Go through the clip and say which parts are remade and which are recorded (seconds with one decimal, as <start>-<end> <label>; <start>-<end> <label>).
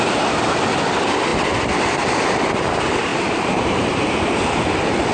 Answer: 0.0-3.1 recorded; 3.1-4.3 remade; 4.3-5.1 recorded